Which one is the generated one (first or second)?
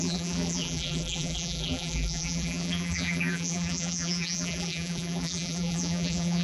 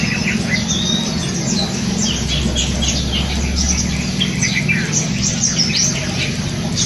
first